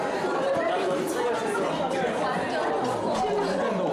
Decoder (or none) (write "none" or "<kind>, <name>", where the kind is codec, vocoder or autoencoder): none